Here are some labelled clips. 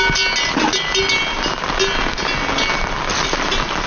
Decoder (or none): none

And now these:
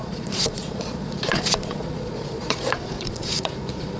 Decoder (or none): vocoder, Vocos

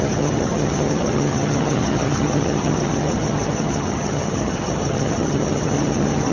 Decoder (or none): vocoder, HiFi-GAN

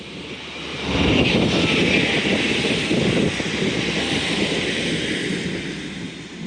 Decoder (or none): none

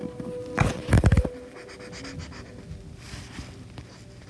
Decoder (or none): none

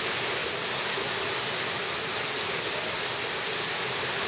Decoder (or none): none